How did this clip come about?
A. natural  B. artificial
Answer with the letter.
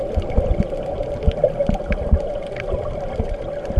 A